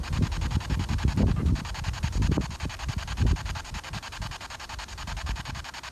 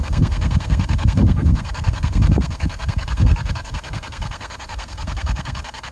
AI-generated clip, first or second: second